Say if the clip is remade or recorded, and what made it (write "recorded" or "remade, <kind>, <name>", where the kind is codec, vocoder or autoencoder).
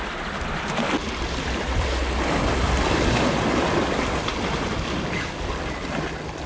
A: recorded